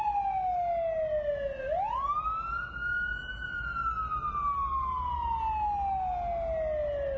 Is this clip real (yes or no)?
yes